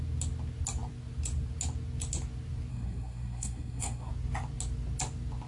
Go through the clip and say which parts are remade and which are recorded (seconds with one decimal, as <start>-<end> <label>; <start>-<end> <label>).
0.0-2.7 recorded; 2.7-4.1 remade; 4.1-5.5 recorded